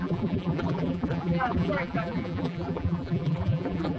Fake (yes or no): yes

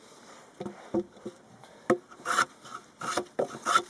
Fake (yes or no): no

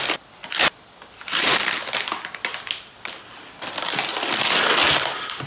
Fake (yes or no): no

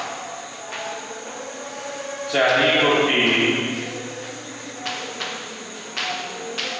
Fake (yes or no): no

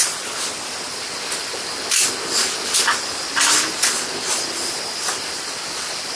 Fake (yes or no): no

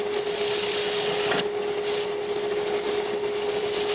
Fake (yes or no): no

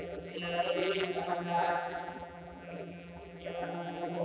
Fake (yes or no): yes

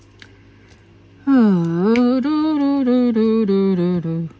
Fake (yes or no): no